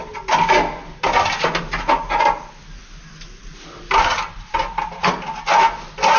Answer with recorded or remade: recorded